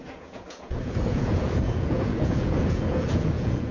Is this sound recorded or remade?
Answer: remade